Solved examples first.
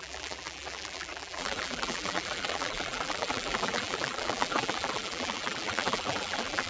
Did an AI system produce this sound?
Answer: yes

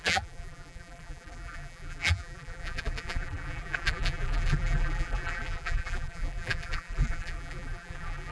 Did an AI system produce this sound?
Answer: yes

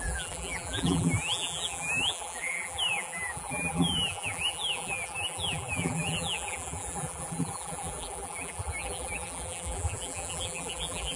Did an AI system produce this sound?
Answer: yes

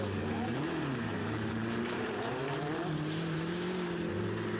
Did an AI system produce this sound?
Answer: yes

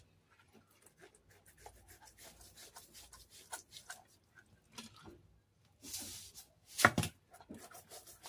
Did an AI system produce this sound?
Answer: no